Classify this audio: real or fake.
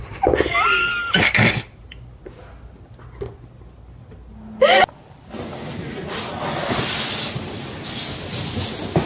real